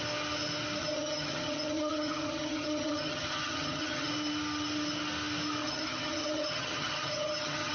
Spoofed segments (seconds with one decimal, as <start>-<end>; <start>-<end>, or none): 0.8-4.1; 5.6-7.7